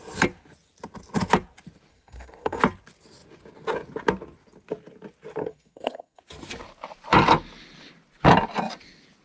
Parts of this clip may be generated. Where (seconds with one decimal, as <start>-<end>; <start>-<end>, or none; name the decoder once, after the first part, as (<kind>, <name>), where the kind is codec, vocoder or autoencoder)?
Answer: 1.9-2.6 (codec, SNAC); 5.4-6.2